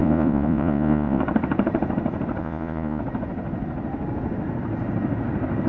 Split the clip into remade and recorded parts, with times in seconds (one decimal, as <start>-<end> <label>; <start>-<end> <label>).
0.0-1.2 remade; 1.2-2.4 recorded; 2.4-3.0 remade; 3.0-5.7 recorded